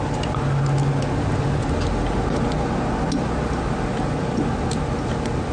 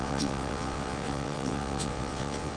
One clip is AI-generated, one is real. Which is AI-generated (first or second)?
second